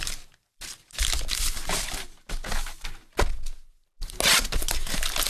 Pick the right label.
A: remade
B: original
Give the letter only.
B